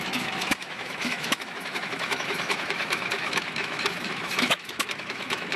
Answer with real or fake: fake